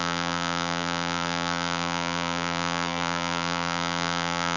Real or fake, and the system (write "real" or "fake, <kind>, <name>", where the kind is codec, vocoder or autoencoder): fake, vocoder, BigVGAN v2